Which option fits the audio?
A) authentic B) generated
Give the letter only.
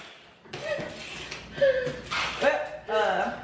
A